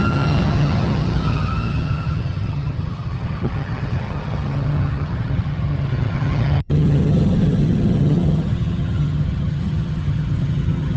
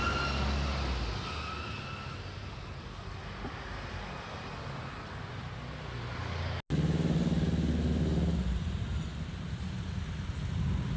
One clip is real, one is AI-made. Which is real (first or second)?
second